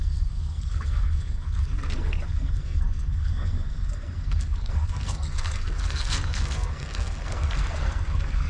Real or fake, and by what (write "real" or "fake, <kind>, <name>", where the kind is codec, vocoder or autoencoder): fake, codec, SNAC